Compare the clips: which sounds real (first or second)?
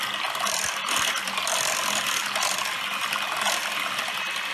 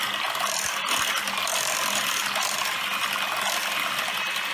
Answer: second